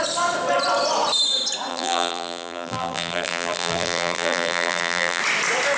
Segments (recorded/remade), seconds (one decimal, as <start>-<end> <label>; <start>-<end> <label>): 0.0-1.7 recorded; 1.7-5.2 remade; 5.2-5.8 recorded